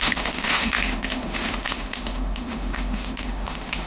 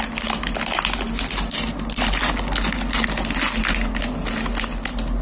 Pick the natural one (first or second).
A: second